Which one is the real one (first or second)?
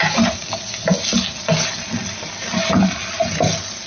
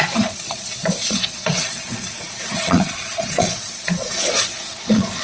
first